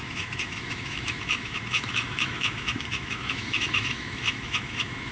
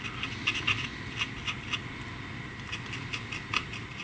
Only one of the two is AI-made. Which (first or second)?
first